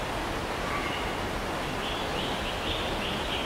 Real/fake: real